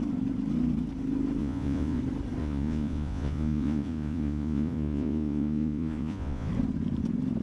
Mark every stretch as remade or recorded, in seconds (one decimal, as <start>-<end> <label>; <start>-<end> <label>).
0.0-1.4 recorded; 1.4-2.0 remade; 2.0-2.4 recorded; 2.4-6.5 remade; 6.5-7.4 recorded